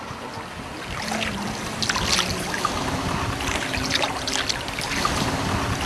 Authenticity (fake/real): real